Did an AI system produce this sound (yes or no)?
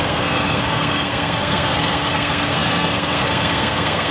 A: yes